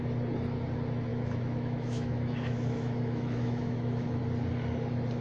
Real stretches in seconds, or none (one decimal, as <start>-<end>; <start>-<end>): 0.0-1.1; 4.2-5.2